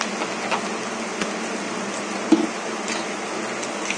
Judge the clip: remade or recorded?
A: recorded